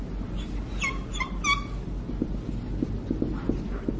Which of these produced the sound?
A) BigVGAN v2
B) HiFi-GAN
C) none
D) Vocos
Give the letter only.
C